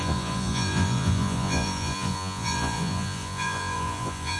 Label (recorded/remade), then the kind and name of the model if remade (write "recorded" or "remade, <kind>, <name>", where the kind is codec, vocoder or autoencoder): remade, vocoder, Vocos